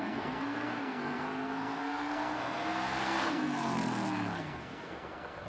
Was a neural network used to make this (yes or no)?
yes